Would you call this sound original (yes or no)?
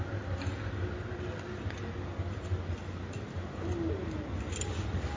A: yes